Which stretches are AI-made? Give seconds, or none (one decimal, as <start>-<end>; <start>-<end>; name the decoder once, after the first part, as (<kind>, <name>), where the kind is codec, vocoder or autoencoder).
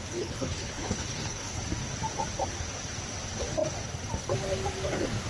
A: 0.0-1.6 (codec, HILCodec)